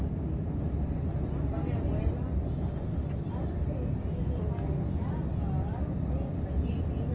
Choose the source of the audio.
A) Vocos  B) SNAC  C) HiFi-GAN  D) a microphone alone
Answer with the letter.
D